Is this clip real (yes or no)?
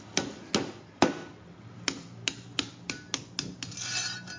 yes